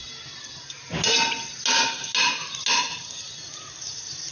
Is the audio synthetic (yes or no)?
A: no